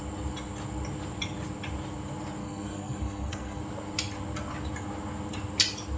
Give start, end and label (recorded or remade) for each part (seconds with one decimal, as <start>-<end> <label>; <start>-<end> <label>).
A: 0.0-2.4 recorded; 2.4-3.6 remade; 3.6-6.0 recorded